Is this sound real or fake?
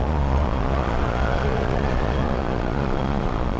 fake